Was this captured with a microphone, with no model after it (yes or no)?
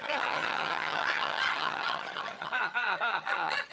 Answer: no